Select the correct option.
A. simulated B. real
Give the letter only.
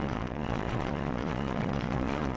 A